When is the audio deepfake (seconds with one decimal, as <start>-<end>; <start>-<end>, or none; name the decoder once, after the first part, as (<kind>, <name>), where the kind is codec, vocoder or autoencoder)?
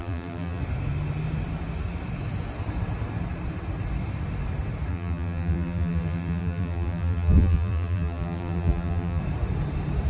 0.0-0.6 (vocoder, BigVGAN v2); 4.9-9.2